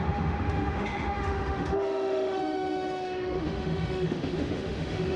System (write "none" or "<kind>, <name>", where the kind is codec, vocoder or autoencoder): autoencoder, DAC-VAE